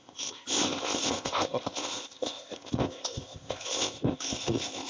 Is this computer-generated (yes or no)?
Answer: yes